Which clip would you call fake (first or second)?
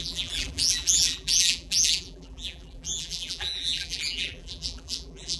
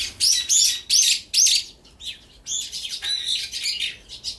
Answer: first